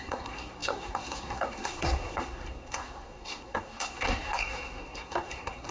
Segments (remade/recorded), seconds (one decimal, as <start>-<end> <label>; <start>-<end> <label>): 0.0-5.7 remade